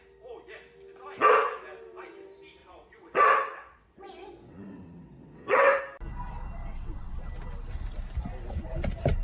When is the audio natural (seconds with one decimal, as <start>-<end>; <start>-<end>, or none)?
0.0-2.6; 5.8-6.7; 7.2-9.2